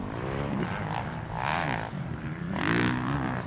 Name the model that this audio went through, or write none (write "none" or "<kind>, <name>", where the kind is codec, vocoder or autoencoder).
vocoder, BigVGAN v2